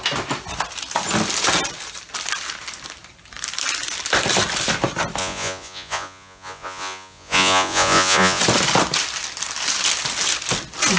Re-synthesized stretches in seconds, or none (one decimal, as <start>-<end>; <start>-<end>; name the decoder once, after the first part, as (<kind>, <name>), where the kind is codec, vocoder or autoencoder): 5.2-8.4 (vocoder, Vocos)